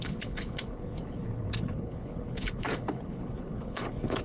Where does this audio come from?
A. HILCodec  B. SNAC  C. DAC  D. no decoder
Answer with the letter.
A